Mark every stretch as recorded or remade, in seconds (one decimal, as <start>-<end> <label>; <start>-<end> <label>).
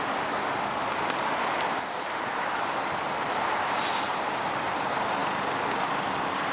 0.0-6.5 recorded